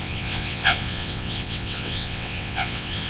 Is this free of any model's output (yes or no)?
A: no